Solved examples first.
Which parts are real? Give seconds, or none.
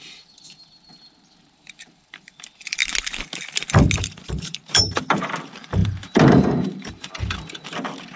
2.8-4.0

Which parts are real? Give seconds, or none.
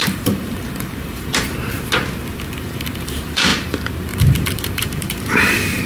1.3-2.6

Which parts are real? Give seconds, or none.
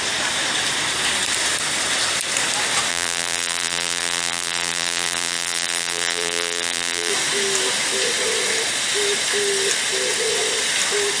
0.0-2.9; 7.1-11.2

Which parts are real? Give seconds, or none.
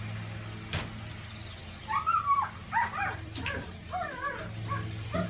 0.0-2.6; 4.4-5.3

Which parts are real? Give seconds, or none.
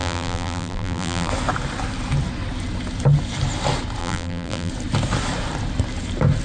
1.3-4.0; 4.7-6.4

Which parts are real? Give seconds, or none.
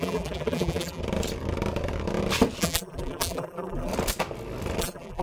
1.0-2.6; 3.9-4.8